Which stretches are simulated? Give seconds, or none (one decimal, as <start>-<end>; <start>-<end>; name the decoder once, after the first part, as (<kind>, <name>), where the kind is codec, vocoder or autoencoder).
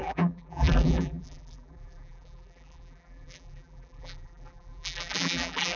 0.0-5.8 (vocoder, BigVGAN v2)